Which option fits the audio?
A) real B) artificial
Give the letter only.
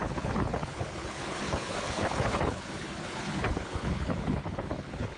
B